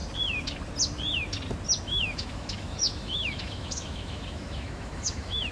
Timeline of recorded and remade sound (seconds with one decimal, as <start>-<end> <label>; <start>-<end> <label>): 0.0-1.8 recorded; 1.8-5.5 remade

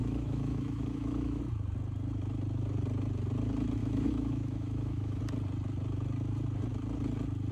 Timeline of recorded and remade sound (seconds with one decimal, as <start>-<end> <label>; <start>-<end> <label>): 0.0-1.4 remade; 1.4-3.8 recorded; 3.8-5.2 remade; 5.2-7.5 recorded

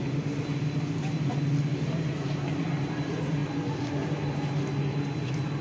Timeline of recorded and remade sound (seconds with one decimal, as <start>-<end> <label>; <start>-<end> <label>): 0.0-5.6 recorded

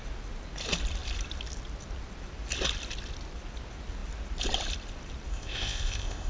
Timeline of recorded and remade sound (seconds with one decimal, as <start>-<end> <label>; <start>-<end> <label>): 0.0-5.3 recorded; 5.3-6.3 remade